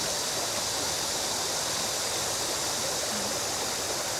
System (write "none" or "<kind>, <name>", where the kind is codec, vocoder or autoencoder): none